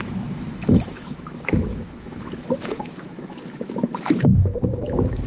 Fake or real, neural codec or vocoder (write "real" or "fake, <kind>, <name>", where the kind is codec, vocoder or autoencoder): fake, autoencoder, DAC-VAE